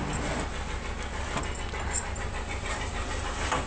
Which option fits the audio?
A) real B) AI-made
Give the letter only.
A